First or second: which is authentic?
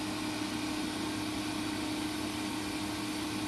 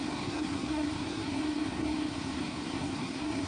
first